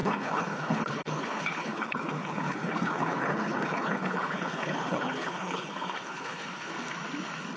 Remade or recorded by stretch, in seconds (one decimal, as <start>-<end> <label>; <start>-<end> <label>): 0.0-6.7 remade; 6.7-7.6 recorded